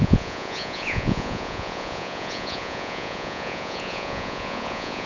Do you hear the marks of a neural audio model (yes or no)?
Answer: yes